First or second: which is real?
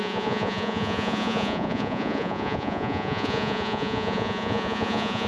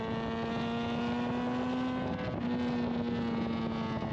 second